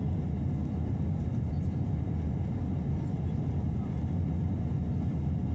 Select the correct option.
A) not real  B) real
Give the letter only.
B